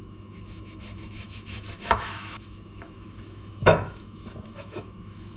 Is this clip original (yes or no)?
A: no